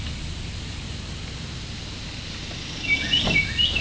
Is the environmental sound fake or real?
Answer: real